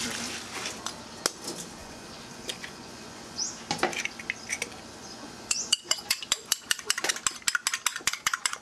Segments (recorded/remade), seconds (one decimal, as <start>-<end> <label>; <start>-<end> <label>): 0.0-1.8 recorded; 1.8-3.4 remade; 3.4-5.0 recorded; 5.0-7.1 remade; 7.1-7.9 recorded; 7.9-8.6 remade